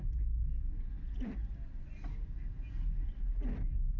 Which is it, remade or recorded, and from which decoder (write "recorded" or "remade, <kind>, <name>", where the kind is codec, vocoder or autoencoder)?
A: recorded